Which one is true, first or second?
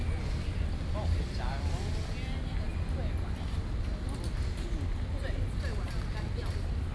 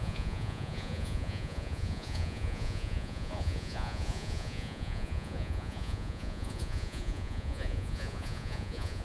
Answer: first